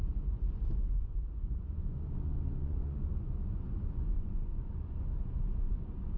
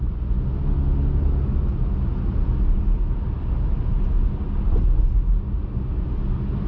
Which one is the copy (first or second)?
first